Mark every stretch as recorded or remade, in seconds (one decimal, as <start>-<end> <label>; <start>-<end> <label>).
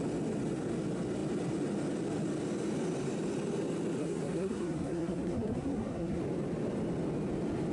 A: 0.0-4.0 recorded; 4.0-6.2 remade; 6.2-7.7 recorded